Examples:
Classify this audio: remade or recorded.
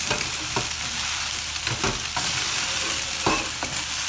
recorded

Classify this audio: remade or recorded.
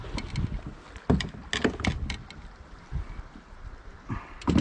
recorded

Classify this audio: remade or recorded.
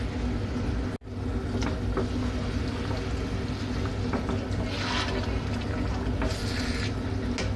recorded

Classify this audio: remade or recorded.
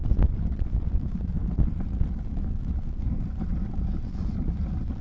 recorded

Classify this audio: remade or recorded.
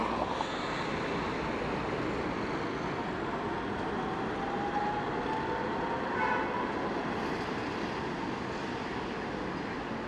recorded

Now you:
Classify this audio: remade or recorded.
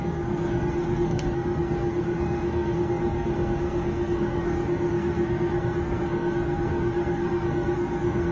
remade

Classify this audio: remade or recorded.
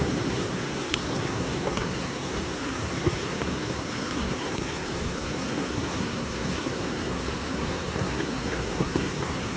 remade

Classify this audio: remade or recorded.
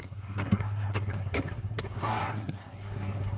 remade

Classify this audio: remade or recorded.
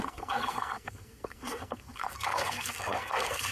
remade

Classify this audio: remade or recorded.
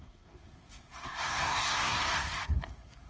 remade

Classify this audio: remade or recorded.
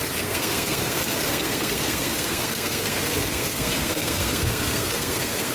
remade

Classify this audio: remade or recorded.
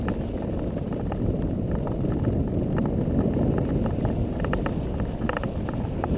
recorded